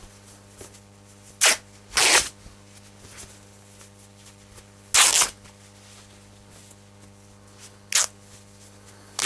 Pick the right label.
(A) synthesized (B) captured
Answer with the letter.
B